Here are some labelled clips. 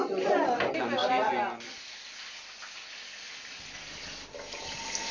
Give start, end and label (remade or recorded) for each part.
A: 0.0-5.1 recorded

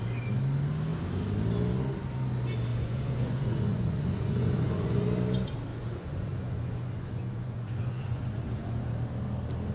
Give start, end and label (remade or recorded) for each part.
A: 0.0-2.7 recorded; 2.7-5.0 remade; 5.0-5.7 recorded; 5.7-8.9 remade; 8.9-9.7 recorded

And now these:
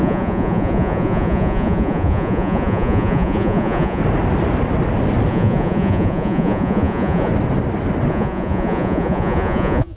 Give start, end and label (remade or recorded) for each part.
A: 0.0-4.0 remade; 4.0-5.3 recorded; 5.3-7.3 remade; 7.3-8.1 recorded; 8.1-10.0 remade